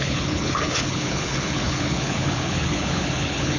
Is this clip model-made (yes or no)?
yes